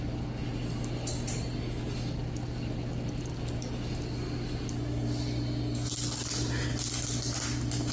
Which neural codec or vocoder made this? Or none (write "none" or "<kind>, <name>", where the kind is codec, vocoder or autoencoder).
none